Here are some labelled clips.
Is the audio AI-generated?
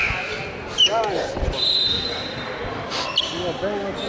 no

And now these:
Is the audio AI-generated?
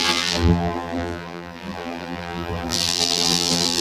yes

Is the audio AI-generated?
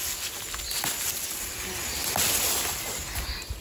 no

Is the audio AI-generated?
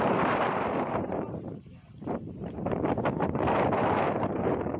yes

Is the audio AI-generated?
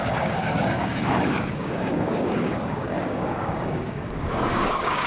yes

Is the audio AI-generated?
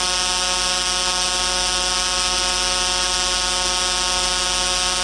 no